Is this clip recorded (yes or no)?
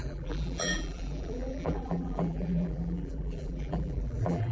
no